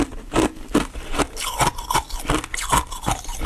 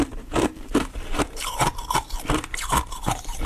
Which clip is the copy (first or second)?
second